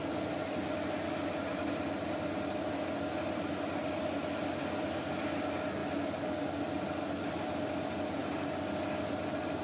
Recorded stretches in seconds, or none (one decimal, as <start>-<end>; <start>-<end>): 0.0-9.6